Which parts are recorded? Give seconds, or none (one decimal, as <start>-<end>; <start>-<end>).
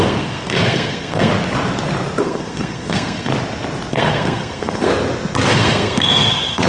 1.3-2.2; 3.3-3.9; 4.9-5.5